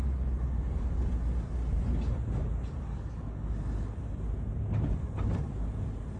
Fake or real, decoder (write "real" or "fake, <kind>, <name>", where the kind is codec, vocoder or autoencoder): real